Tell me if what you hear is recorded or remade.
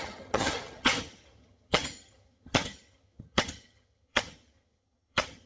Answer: remade